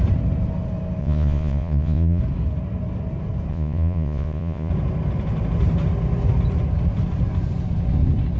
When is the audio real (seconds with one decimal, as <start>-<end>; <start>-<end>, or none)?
0.0-1.0; 2.2-3.5; 4.7-8.4